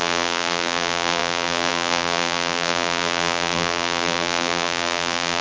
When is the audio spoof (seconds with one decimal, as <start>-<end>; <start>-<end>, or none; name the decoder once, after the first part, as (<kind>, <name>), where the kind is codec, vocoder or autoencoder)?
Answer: 0.0-5.4 (vocoder, BigVGAN v2)